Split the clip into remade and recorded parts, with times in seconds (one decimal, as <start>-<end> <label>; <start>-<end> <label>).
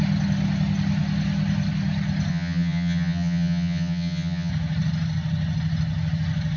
0.0-2.3 recorded; 2.3-4.5 remade; 4.5-6.6 recorded